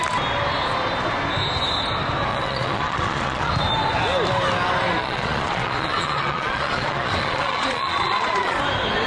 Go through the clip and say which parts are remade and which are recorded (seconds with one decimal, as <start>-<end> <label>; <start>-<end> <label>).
0.0-2.3 recorded; 2.3-3.5 remade; 3.5-5.0 recorded; 5.0-8.6 remade; 8.6-9.1 recorded

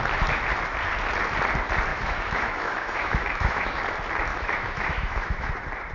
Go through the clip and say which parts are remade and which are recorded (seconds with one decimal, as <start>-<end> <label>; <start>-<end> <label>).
0.0-1.9 recorded; 1.9-3.8 remade; 3.8-4.3 recorded; 4.3-5.5 remade; 5.5-5.9 recorded

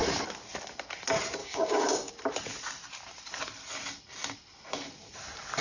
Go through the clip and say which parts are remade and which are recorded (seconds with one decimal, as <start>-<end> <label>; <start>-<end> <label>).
0.0-1.4 recorded; 1.4-2.1 remade; 2.1-5.6 recorded

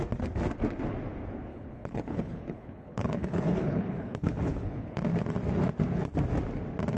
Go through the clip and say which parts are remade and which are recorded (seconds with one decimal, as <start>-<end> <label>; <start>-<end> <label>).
0.0-1.5 recorded; 1.5-5.0 remade; 5.0-7.0 recorded